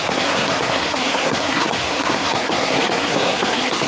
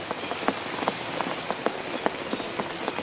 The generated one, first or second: first